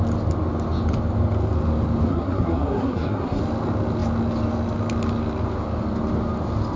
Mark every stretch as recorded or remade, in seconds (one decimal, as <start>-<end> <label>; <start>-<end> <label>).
0.0-2.1 recorded; 2.1-3.4 remade; 3.4-6.8 recorded